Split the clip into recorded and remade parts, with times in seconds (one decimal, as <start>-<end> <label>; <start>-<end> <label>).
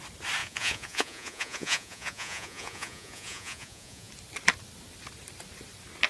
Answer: 0.0-0.4 recorded; 0.4-4.1 remade; 4.1-6.1 recorded